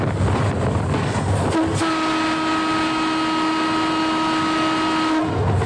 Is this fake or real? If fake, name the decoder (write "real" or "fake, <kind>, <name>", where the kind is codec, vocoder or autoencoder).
real